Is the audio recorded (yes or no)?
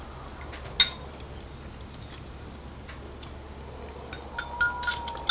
yes